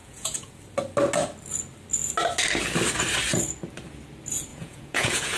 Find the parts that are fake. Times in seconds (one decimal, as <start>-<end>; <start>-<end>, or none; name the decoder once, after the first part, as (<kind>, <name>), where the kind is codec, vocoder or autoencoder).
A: 0.0-0.6 (vocoder, Vocos); 4.5-5.4